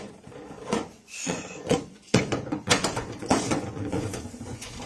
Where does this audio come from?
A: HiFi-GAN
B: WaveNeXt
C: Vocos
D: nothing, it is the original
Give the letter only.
C